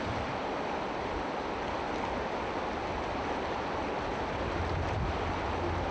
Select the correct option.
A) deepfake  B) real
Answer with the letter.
B